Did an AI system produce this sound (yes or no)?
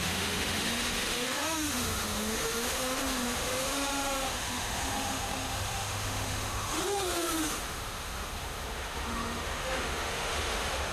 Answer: yes